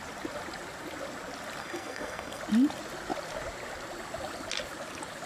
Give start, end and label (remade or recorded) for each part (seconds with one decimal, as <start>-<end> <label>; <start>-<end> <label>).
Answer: 0.0-1.6 recorded; 1.6-2.4 remade; 2.4-5.3 recorded